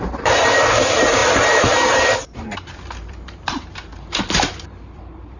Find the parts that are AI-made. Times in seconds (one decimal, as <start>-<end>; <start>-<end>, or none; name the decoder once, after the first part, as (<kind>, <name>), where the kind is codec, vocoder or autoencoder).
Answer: 0.0-5.4 (vocoder, BigVGAN v2)